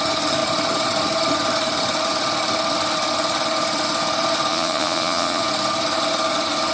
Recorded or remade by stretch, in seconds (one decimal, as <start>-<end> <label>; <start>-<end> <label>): 0.0-4.5 recorded; 4.5-5.4 remade; 5.4-6.7 recorded